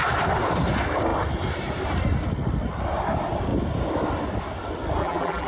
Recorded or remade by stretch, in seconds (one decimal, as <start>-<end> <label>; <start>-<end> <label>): 0.0-5.0 recorded; 5.0-5.5 remade